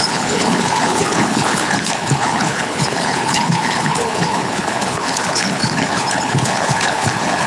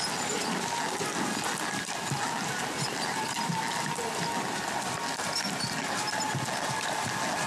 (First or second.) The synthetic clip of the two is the first